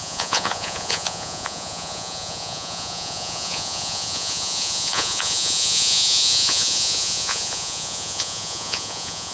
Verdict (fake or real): fake